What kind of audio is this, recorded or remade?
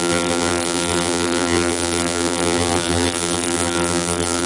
remade